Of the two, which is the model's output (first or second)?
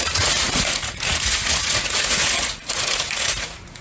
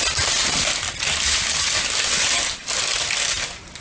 first